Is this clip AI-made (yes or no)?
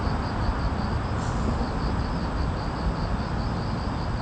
no